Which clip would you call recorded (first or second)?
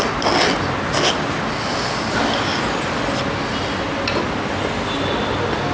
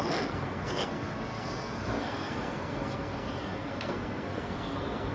first